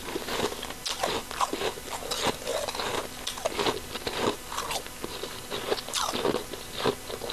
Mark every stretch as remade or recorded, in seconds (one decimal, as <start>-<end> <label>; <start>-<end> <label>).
0.0-7.3 recorded